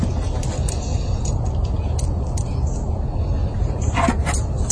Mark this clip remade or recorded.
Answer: recorded